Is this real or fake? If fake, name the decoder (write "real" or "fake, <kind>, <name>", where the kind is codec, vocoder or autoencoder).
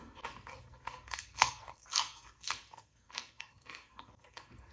fake, codec, SNAC